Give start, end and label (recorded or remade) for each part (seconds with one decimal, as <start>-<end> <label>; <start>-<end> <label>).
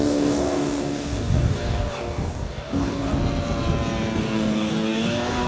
0.0-3.1 remade; 3.1-4.2 recorded; 4.2-5.5 remade